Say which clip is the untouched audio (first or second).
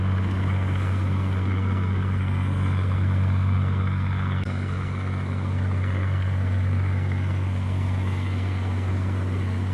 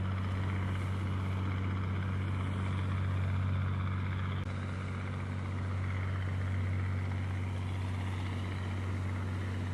second